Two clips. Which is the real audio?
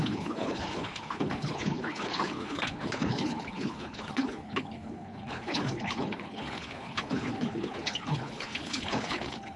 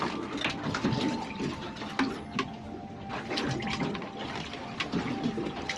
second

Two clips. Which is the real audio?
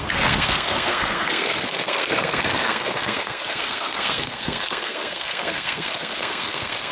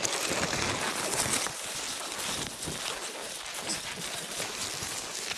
second